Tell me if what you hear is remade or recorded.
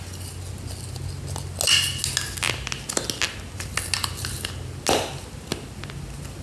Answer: recorded